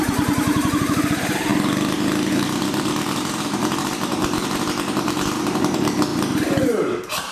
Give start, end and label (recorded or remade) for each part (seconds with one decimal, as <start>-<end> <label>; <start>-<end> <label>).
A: 0.0-1.5 remade; 1.5-2.3 recorded; 2.3-6.1 remade; 6.1-6.6 recorded; 6.6-7.3 remade